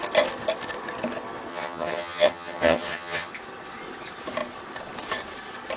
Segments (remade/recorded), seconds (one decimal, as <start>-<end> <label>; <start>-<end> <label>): 0.0-1.5 recorded; 1.5-3.3 remade; 3.3-5.8 recorded